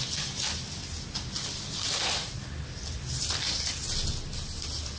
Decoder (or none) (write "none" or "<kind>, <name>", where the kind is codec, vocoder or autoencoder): none